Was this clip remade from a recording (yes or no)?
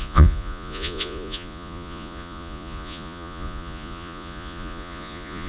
yes